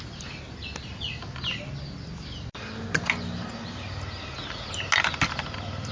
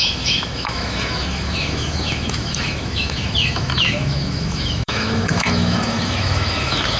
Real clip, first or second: first